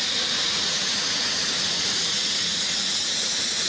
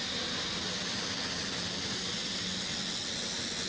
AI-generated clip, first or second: first